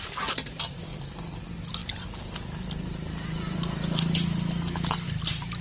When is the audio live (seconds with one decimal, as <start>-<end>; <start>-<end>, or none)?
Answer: 0.0-5.6